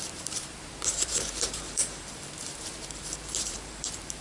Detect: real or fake fake